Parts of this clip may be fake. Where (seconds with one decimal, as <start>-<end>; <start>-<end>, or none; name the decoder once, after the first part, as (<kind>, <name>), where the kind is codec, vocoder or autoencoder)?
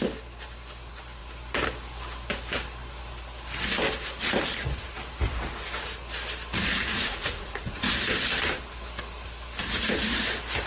6.9-7.9 (vocoder, Vocos)